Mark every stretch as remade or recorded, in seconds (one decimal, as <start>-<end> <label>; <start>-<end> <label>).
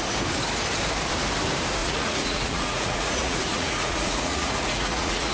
0.0-1.8 recorded; 1.8-5.3 remade